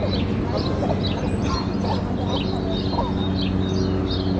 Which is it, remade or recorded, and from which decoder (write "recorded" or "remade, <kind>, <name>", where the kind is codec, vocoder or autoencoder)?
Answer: recorded